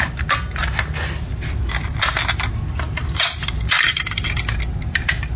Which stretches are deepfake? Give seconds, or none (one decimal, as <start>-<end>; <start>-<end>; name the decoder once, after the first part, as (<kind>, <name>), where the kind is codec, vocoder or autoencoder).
none